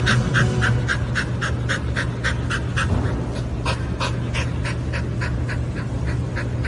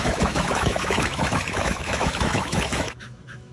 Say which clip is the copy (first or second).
second